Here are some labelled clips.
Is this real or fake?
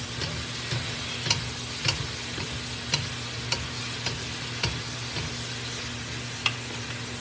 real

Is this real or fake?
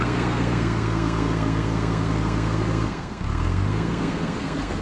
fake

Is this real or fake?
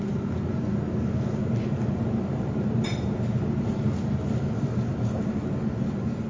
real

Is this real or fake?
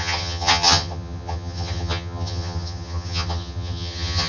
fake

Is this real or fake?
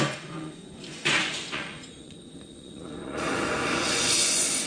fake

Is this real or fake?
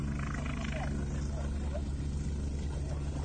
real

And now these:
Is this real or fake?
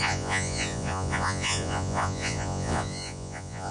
fake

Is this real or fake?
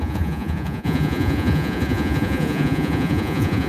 fake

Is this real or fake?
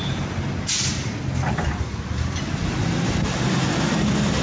real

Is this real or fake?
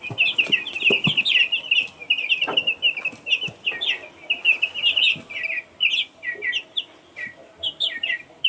real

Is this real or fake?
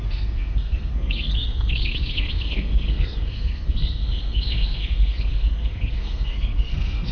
fake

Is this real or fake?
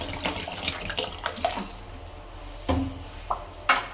real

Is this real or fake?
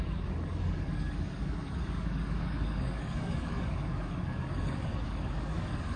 fake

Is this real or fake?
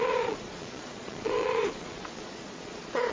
fake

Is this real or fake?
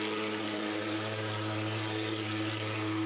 real